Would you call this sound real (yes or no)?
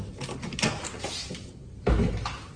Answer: yes